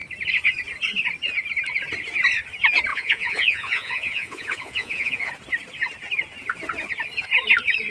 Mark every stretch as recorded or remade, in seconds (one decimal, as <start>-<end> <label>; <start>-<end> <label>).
0.0-2.9 recorded; 2.9-5.3 remade; 5.3-7.9 recorded